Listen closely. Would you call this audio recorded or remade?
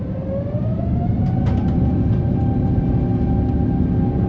recorded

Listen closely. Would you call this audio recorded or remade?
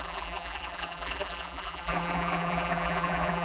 remade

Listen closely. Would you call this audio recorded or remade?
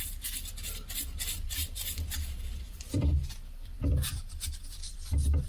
remade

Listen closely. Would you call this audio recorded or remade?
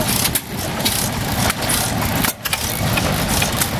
recorded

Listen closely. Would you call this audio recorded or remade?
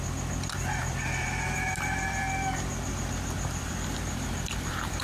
remade